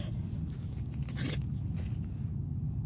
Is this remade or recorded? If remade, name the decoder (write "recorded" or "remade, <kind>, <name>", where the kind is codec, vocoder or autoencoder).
recorded